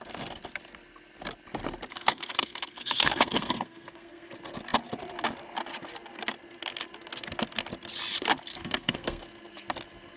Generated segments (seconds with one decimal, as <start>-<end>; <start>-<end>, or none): 1.9-4.3; 8.5-9.2